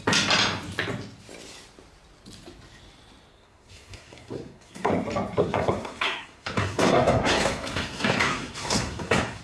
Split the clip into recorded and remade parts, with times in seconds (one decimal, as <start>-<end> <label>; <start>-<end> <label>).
0.0-3.3 recorded; 3.3-4.9 remade; 4.9-5.4 recorded; 5.4-9.4 remade